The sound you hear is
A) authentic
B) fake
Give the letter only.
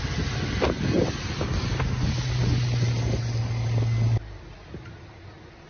A